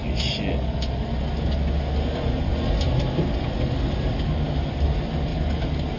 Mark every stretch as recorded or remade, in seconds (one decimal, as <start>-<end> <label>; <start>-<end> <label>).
0.0-6.0 recorded